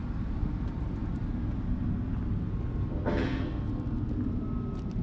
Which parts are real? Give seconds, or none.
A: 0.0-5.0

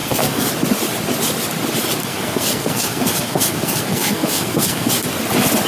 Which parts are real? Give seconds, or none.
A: 0.5-2.0; 4.9-5.7

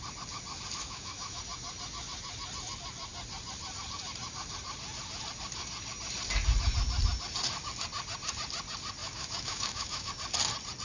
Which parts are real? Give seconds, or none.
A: 0.0-0.8; 1.4-9.0; 10.1-10.8